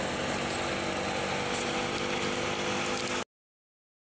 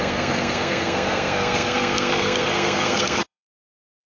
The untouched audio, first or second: first